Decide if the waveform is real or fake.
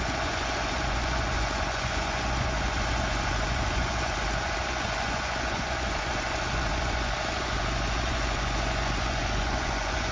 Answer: fake